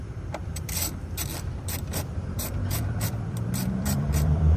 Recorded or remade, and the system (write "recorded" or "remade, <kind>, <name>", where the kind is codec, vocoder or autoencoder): remade, vocoder, BigVGAN v2